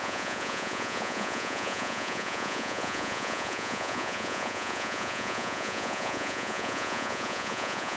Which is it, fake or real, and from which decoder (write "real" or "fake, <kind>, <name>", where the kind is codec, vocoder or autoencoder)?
fake, vocoder, Vocos